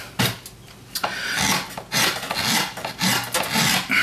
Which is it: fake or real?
real